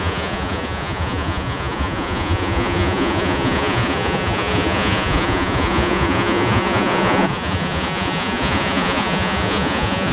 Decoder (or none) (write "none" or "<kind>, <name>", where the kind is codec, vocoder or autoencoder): vocoder, Vocos